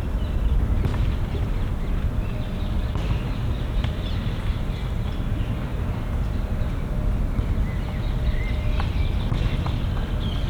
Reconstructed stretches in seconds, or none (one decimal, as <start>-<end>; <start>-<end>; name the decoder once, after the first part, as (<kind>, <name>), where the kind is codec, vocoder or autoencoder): 0.9-4.4 (vocoder, BigVGAN v2); 5.7-7.0